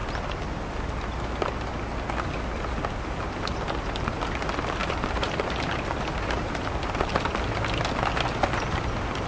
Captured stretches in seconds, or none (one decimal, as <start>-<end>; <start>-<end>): 0.0-4.8; 7.1-9.3